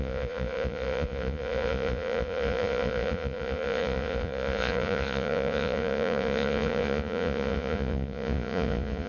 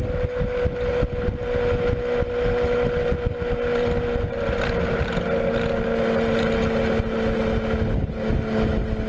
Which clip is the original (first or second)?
second